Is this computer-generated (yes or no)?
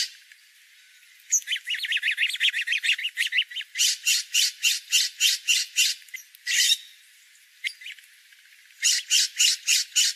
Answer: no